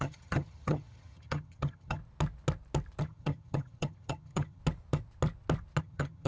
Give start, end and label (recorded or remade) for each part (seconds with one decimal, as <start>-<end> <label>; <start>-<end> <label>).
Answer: 0.0-2.0 remade; 2.0-3.0 recorded; 3.0-4.6 remade; 4.6-5.8 recorded; 5.8-6.3 remade